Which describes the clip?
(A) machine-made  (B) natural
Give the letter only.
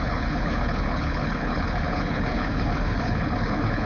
A